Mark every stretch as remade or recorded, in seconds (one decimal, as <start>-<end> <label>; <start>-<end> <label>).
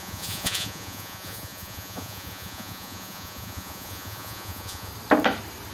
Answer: 0.0-4.9 remade; 4.9-5.7 recorded